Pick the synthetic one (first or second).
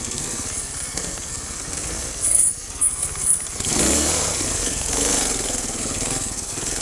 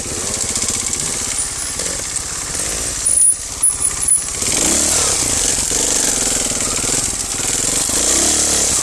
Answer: first